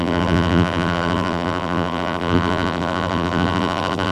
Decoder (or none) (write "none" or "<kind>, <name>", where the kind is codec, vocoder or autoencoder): vocoder, BigVGAN v2